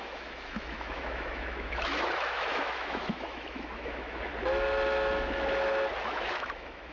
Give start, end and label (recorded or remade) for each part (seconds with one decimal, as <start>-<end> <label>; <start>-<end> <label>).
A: 0.0-4.3 remade; 4.3-6.0 recorded; 6.0-6.9 remade